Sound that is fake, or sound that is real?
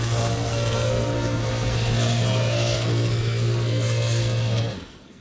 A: fake